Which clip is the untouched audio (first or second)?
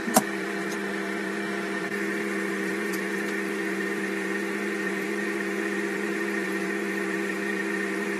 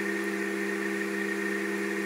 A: second